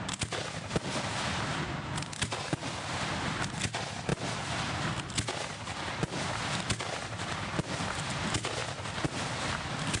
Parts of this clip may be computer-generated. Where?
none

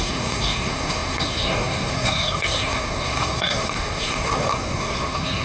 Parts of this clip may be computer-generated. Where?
0.0-5.4